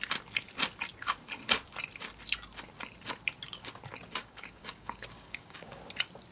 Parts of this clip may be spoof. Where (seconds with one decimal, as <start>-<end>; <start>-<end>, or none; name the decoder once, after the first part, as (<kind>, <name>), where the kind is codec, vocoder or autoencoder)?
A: 4.2-5.8 (codec, DAC)